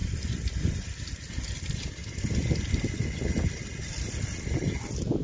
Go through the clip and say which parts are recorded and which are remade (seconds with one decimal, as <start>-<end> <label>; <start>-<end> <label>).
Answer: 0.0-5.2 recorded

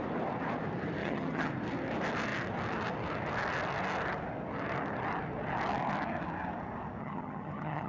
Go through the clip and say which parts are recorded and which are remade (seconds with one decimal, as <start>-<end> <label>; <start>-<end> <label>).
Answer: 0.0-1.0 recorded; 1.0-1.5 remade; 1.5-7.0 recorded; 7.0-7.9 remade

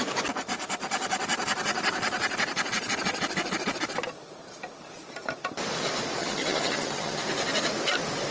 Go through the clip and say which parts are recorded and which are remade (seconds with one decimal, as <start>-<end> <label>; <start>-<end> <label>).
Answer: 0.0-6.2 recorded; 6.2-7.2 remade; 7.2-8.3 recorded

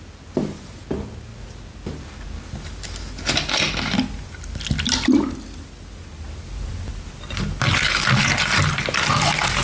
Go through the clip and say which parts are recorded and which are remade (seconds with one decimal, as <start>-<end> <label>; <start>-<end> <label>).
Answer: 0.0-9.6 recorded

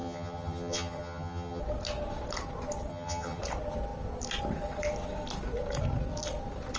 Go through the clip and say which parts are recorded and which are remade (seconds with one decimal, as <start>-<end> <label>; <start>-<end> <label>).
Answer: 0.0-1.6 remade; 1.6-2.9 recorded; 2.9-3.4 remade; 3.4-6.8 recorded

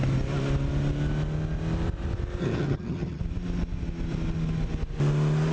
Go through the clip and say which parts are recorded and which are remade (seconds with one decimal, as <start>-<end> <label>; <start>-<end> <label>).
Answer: 0.0-2.4 recorded; 2.4-3.2 remade; 3.2-5.5 recorded